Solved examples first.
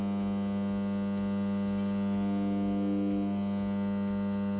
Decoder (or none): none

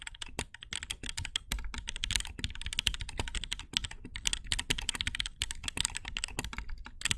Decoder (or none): none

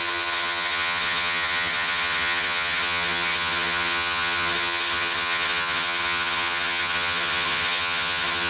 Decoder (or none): vocoder, HiFi-GAN